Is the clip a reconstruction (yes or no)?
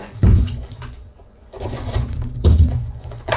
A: yes